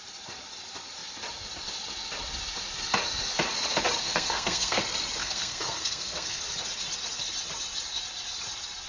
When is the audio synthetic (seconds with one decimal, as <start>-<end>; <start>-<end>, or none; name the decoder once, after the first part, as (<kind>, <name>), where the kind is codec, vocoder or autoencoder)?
4.0-4.8 (codec, SNAC); 5.2-6.4